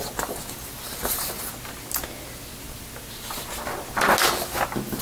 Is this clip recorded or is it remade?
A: recorded